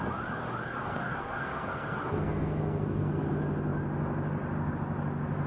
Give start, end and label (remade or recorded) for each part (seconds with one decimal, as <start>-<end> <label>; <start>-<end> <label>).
0.0-0.7 recorded; 0.7-3.3 remade; 3.3-5.5 recorded